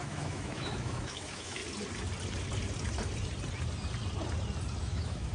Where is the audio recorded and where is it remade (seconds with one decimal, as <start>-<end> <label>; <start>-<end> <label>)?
0.0-1.6 remade; 1.6-4.8 recorded; 4.8-5.3 remade